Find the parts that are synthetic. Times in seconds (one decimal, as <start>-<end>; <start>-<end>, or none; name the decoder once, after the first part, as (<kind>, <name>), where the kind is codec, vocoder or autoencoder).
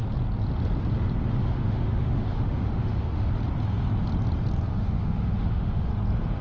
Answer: 1.4-3.3 (autoencoder, DAC-VAE); 4.7-5.9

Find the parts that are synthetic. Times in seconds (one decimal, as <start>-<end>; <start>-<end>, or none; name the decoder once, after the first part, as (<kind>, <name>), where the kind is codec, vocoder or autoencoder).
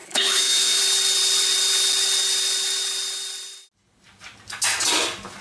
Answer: 0.0-0.8 (autoencoder, DAC-VAE)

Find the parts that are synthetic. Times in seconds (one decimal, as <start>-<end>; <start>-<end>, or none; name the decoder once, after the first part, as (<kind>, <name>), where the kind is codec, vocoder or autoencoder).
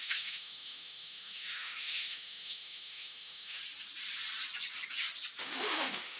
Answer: 0.0-3.6 (autoencoder, DAC-VAE); 5.4-6.2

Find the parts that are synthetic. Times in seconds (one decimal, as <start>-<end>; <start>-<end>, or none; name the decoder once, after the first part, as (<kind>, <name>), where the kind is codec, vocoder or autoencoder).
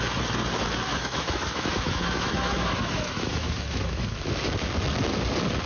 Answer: 0.9-4.3 (autoencoder, DAC-VAE)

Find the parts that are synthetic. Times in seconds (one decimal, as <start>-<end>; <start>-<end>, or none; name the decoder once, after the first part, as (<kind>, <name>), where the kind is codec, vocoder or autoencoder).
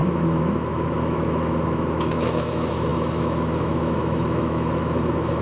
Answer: 0.0-5.4 (autoencoder, DAC-VAE)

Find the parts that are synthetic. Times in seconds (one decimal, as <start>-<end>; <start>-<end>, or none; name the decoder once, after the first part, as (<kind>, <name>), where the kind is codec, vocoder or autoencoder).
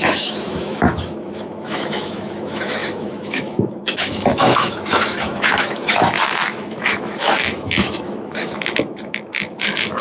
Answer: 0.0-10.0 (autoencoder, DAC-VAE)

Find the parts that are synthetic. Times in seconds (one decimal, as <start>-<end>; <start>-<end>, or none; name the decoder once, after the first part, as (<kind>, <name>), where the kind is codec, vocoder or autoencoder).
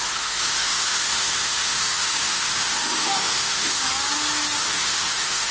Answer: 0.0-3.8 (autoencoder, DAC-VAE); 4.6-5.5